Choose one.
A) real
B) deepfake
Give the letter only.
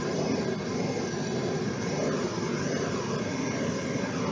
A